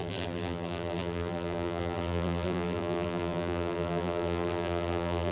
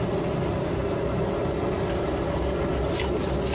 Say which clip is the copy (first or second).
first